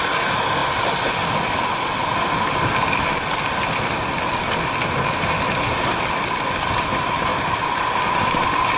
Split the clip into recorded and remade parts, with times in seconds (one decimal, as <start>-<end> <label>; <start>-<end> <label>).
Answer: 0.0-8.8 recorded